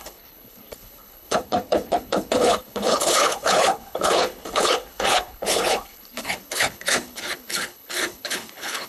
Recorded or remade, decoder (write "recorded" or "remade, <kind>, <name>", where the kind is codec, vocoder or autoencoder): remade, codec, HILCodec